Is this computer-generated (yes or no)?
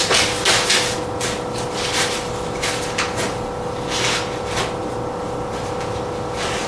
no